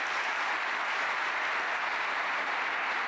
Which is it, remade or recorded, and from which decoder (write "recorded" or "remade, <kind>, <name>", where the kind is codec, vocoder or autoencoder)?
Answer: recorded